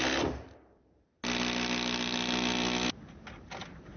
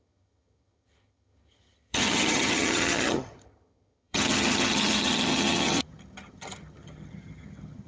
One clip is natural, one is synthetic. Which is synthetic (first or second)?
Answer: second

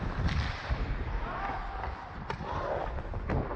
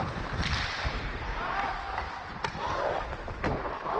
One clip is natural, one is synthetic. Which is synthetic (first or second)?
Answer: second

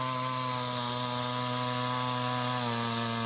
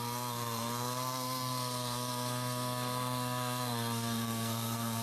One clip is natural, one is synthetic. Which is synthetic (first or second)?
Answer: second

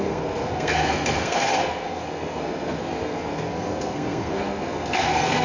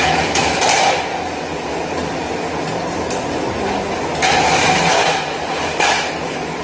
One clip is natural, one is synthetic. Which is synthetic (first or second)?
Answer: first